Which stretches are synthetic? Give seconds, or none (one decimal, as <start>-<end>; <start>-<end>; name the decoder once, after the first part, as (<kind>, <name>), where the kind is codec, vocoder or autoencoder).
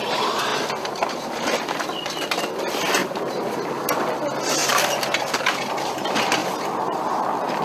3.0-3.7 (vocoder, BigVGAN v2)